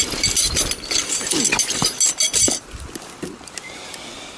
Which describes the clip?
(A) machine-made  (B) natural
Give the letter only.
B